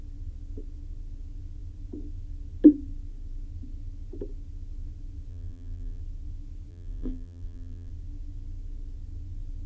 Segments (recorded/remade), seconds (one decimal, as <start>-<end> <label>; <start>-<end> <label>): 0.0-5.3 recorded; 5.3-6.0 remade; 6.0-6.7 recorded; 6.7-7.9 remade; 7.9-9.7 recorded